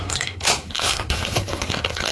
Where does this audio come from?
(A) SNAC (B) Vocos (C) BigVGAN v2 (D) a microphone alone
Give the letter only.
A